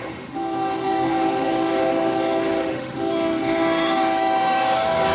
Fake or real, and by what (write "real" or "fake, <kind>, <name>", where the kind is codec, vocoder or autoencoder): fake, autoencoder, DAC-VAE